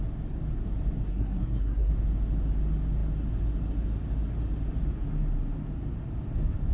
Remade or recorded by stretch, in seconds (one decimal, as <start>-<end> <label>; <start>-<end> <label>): 0.0-1.1 recorded; 1.1-1.9 remade; 1.9-6.7 recorded